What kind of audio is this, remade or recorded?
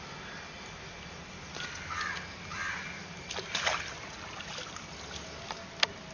remade